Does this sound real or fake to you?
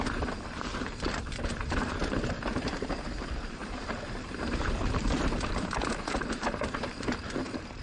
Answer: fake